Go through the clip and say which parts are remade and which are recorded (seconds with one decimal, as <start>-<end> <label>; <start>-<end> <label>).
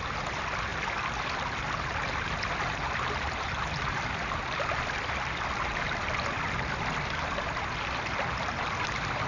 0.0-9.3 recorded